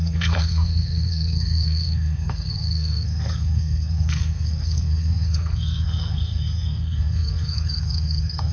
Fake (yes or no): yes